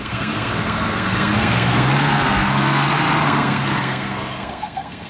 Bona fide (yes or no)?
no